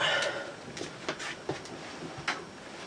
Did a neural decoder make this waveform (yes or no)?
no